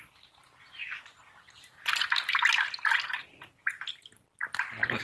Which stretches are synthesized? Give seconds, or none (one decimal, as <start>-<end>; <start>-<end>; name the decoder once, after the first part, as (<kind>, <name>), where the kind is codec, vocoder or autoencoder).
none